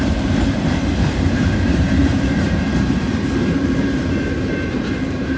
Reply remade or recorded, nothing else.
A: remade